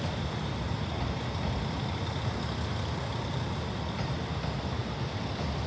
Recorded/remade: recorded